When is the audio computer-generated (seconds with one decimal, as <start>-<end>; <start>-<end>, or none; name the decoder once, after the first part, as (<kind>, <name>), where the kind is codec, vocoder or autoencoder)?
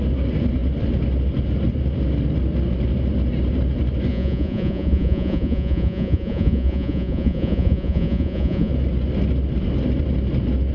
4.1-8.7 (vocoder, Vocos)